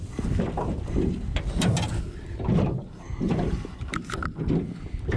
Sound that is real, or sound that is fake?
real